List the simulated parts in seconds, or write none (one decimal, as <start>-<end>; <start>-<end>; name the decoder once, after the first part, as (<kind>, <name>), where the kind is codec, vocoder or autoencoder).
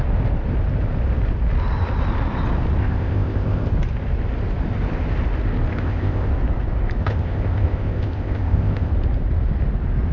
2.8-3.7 (codec, ZipCodec); 5.7-6.3; 7.0-8.9